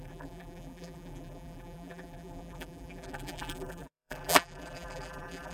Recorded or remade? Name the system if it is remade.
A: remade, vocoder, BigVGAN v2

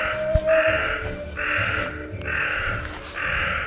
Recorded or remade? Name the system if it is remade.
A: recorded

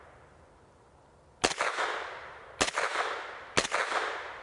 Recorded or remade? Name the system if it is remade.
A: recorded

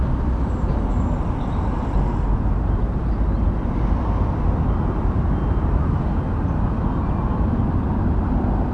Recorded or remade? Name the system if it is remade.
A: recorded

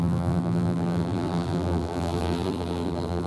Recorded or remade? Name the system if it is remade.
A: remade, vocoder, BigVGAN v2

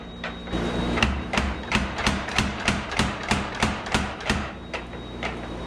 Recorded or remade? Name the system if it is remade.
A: remade, vocoder, BigVGAN v2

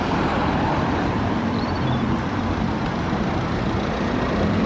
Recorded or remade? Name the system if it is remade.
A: remade, vocoder, BigVGAN v2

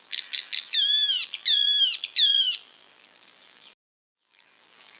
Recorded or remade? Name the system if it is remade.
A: remade, vocoder, BigVGAN v2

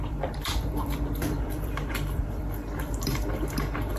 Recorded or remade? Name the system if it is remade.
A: remade, vocoder, BigVGAN v2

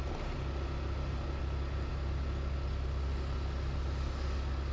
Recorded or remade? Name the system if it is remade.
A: recorded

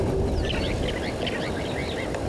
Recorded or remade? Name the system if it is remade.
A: recorded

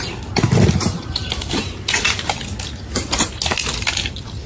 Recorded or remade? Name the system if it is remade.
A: recorded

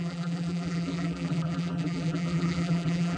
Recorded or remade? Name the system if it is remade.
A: remade, vocoder, BigVGAN v2